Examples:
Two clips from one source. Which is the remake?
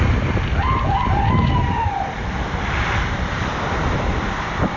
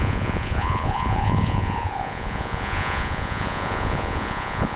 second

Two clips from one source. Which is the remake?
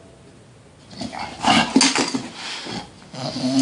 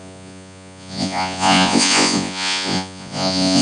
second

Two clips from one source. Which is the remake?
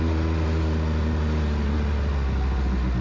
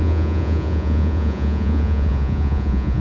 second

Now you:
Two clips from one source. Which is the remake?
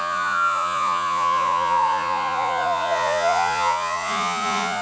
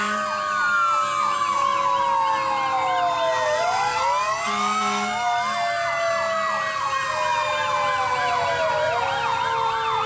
first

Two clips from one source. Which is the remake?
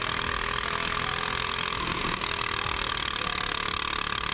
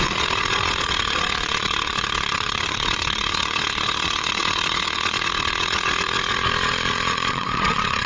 second